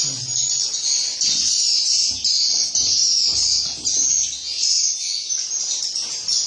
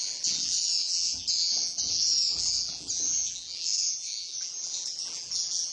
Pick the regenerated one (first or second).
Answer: second